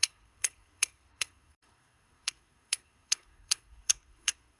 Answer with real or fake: fake